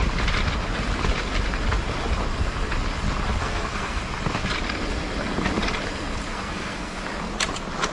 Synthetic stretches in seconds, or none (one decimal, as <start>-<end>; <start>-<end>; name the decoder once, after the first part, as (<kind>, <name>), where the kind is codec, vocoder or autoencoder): 3.4-4.0 (codec, SNAC); 6.3-7.0